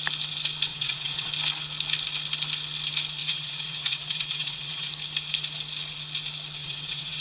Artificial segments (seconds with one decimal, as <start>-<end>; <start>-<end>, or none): 0.7-1.3; 3.2-4.9; 6.6-7.2